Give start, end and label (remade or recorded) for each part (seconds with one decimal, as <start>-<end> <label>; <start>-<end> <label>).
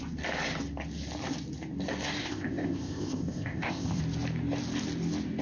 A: 0.0-2.2 recorded; 2.2-4.0 remade; 4.0-5.4 recorded